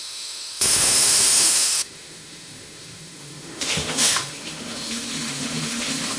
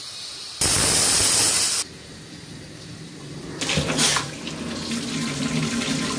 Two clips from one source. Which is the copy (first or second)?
first